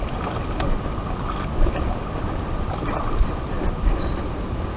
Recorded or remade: recorded